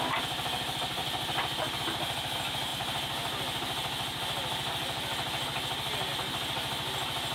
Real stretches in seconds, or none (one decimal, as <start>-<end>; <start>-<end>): 0.0-7.3